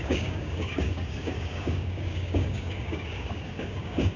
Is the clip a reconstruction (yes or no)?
yes